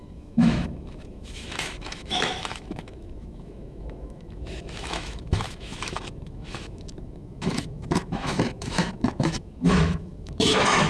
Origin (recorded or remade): remade